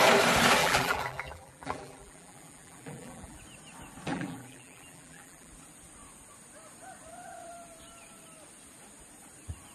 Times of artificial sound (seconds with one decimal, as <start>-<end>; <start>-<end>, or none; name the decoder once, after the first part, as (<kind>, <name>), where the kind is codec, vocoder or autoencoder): 0.6-3.4 (vocoder, BigVGAN v2); 4.1-5.5